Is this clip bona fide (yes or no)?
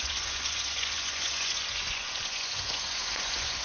no